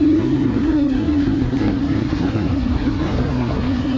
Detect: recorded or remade remade